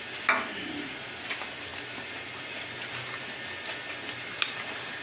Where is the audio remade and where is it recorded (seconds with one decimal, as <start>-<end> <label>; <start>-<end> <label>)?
0.0-5.0 recorded